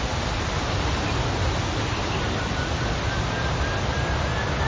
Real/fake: real